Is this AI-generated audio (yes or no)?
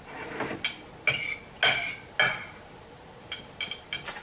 no